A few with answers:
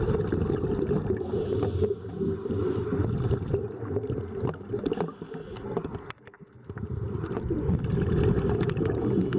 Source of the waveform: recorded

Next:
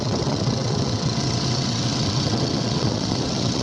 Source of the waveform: remade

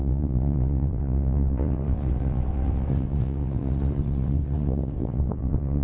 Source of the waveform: remade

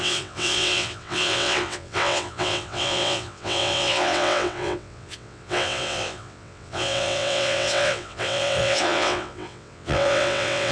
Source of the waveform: remade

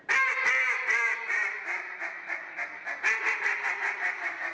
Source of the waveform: recorded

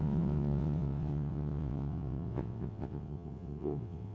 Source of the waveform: remade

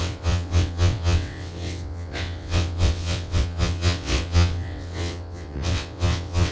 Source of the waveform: remade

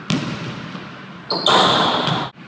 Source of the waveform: recorded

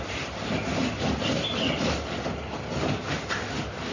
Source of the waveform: recorded